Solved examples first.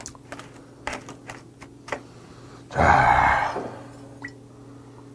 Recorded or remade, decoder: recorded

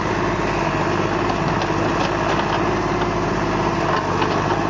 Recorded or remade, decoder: recorded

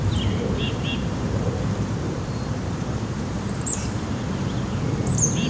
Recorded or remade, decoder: remade, vocoder, BigVGAN v2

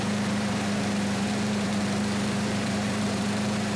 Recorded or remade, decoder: remade, vocoder, BigVGAN v2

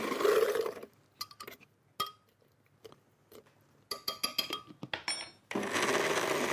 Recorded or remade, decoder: recorded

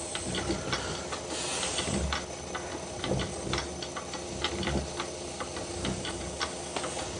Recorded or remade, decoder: recorded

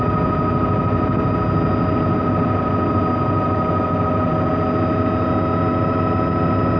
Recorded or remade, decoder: recorded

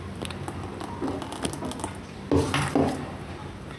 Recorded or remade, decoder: recorded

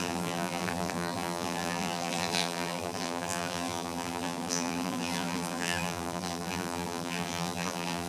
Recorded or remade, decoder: remade, vocoder, BigVGAN v2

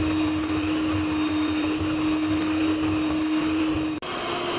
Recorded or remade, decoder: recorded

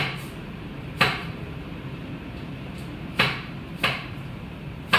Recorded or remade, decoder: remade, vocoder, BigVGAN v2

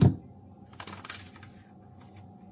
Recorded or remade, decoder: recorded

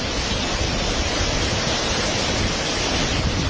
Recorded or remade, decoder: recorded